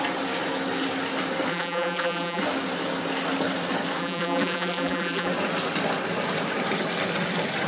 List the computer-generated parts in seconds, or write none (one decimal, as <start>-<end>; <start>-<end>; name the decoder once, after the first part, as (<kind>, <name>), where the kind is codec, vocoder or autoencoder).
1.5-2.4 (vocoder, BigVGAN v2); 4.0-5.3